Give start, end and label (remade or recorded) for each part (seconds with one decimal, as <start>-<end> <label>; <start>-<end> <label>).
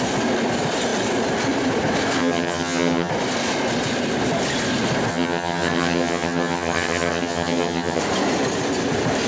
0.0-2.2 recorded; 2.2-3.1 remade; 3.1-5.1 recorded; 5.1-8.0 remade; 8.0-9.3 recorded